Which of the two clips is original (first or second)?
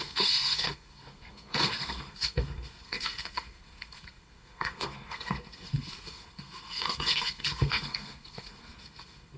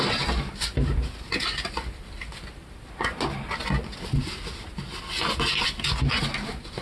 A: second